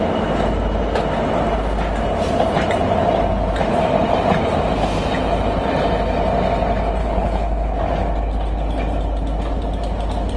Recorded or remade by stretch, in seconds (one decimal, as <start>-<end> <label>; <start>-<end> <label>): 0.0-7.0 recorded; 7.0-7.8 remade; 7.8-10.4 recorded